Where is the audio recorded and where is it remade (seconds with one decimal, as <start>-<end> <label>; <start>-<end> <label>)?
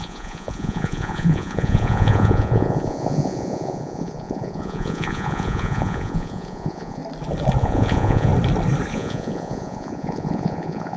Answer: 0.0-7.0 remade; 7.0-7.6 recorded; 7.6-8.3 remade; 8.3-8.9 recorded; 8.9-11.0 remade